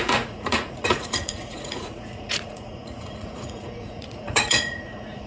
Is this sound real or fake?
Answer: fake